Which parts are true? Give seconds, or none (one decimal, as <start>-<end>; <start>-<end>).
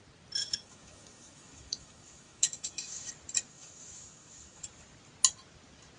0.0-0.4; 3.1-3.5; 4.6-6.0